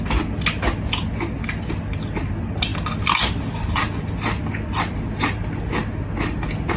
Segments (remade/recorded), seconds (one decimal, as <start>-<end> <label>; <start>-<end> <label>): 0.0-6.8 recorded